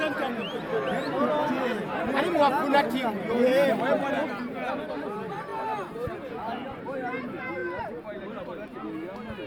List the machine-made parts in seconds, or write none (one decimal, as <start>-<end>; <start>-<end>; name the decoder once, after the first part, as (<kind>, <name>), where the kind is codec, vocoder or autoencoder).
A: none